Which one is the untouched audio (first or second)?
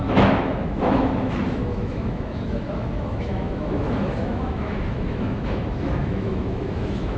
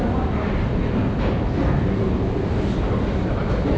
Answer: second